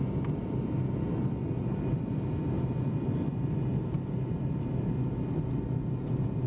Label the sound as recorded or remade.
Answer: recorded